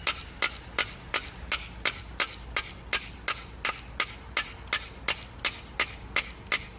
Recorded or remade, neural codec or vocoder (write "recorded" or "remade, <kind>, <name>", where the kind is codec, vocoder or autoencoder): recorded